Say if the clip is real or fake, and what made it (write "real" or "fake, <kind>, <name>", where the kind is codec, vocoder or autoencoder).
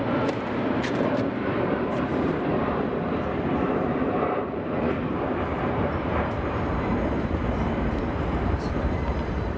fake, vocoder, BigVGAN v2